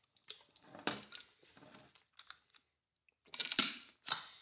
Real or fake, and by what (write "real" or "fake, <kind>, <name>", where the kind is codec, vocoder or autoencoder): real